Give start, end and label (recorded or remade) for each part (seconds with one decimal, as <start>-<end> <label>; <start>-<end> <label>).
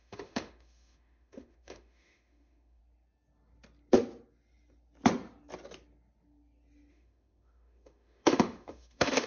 0.0-2.8 remade; 2.8-6.9 recorded; 6.9-9.3 remade